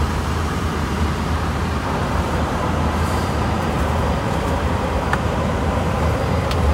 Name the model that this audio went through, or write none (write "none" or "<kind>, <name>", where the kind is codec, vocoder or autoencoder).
vocoder, BigVGAN v2